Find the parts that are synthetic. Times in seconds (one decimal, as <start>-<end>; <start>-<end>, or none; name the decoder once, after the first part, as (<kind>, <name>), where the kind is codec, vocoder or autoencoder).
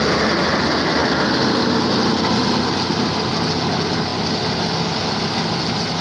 none